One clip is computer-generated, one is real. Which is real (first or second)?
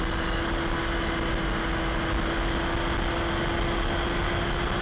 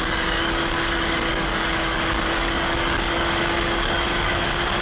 first